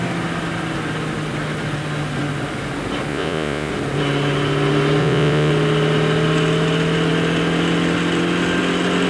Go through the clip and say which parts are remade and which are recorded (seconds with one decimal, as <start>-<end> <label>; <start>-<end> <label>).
0.0-3.1 recorded; 3.1-3.7 remade; 3.7-5.0 recorded; 5.0-5.5 remade; 5.5-9.1 recorded